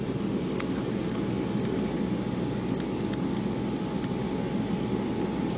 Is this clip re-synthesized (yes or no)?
no